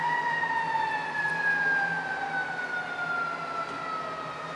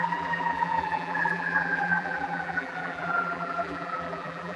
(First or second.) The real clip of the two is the first